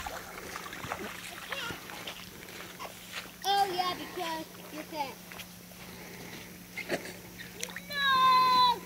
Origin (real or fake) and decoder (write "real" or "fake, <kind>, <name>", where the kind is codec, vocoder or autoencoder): real